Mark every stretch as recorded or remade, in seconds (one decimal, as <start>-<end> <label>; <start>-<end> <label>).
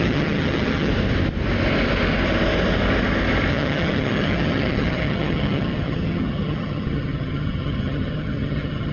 0.0-0.9 remade; 0.9-3.5 recorded; 3.5-8.9 remade